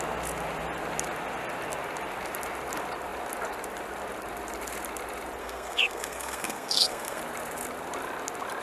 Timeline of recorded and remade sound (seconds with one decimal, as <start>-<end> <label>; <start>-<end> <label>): 0.0-5.4 recorded; 5.4-7.2 remade; 7.2-8.6 recorded